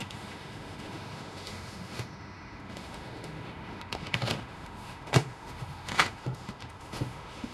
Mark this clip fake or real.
fake